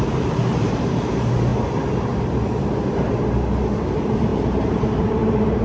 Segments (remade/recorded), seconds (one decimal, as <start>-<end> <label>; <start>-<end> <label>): 0.0-1.5 remade; 1.5-3.9 recorded; 3.9-5.6 remade